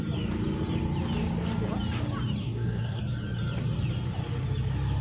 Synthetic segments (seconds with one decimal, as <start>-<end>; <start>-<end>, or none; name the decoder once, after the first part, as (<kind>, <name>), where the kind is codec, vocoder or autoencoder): 2.4-3.0 (codec, SNAC)